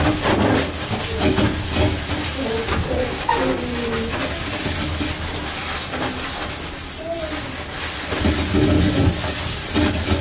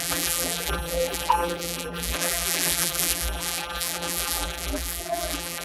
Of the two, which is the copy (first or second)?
second